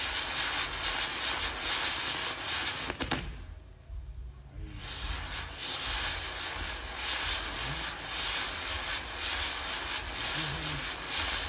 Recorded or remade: recorded